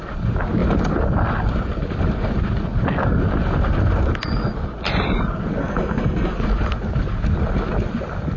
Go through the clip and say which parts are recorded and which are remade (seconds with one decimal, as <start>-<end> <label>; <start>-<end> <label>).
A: 0.0-5.6 recorded; 5.6-6.4 remade; 6.4-8.4 recorded